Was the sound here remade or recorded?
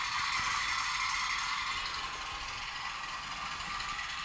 recorded